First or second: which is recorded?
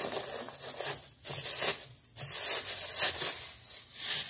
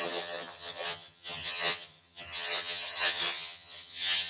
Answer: first